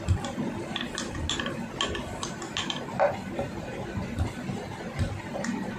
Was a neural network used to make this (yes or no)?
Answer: no